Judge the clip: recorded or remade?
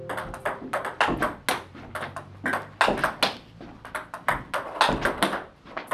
recorded